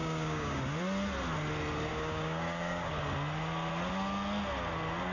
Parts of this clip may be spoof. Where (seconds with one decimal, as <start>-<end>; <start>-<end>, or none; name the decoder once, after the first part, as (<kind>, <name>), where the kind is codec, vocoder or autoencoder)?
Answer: 0.0-0.6 (codec, DAC); 1.9-2.9